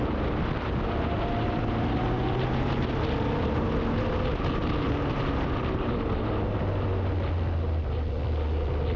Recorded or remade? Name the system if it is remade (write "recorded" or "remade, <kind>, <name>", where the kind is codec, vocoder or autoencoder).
recorded